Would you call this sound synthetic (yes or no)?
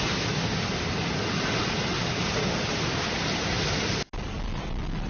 no